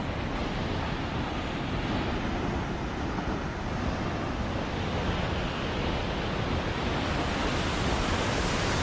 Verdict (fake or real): real